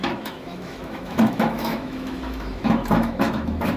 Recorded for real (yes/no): no